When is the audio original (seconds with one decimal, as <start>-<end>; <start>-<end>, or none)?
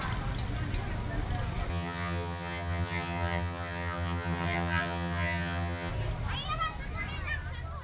0.0-1.7; 5.9-7.8